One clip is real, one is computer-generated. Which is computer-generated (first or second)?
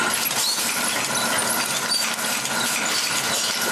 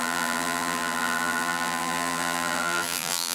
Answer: second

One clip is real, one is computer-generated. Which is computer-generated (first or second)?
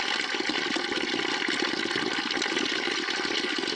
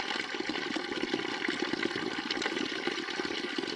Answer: second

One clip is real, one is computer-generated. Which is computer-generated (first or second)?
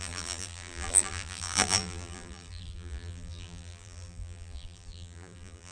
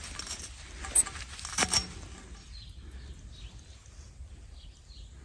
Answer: first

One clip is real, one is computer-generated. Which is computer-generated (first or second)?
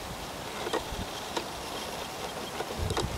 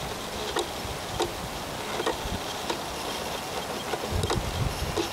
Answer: first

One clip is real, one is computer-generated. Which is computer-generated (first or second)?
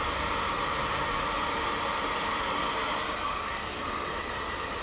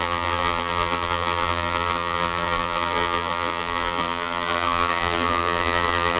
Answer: second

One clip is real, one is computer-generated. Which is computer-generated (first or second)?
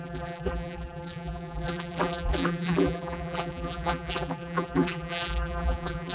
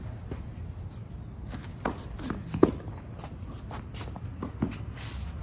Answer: first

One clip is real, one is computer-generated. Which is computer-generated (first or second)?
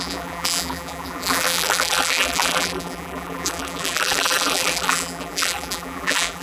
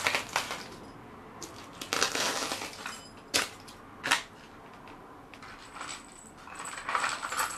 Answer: first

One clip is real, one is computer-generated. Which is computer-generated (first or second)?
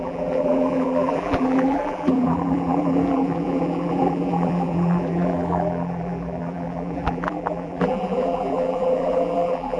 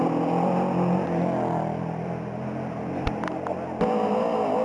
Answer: first